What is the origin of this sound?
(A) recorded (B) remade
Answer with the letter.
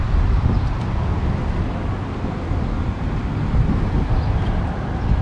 A